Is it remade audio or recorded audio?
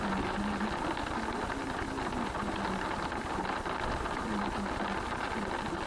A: recorded